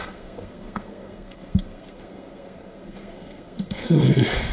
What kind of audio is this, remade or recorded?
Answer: remade